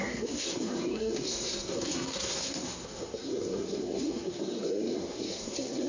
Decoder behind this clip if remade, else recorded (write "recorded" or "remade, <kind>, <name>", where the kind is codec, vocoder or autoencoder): remade, codec, SNAC